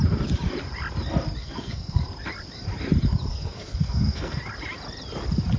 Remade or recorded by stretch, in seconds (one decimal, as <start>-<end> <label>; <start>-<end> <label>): 0.0-1.4 recorded; 1.4-2.0 remade; 2.0-3.3 recorded; 3.3-4.4 remade; 4.4-5.6 recorded